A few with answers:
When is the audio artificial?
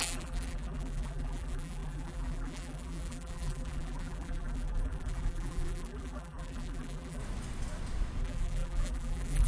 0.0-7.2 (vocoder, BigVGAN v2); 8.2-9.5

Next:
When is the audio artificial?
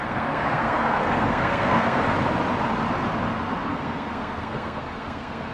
0.0-2.0 (codec, SNAC); 3.7-5.5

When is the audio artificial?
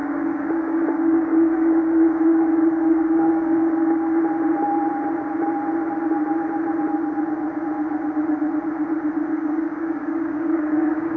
0.0-4.2 (codec, DAC); 9.3-11.2